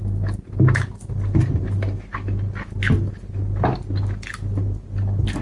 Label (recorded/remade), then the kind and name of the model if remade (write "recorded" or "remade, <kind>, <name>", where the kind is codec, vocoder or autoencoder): recorded